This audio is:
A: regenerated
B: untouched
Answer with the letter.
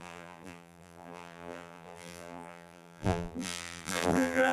A